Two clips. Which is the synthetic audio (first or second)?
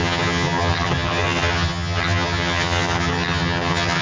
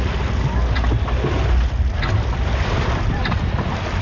first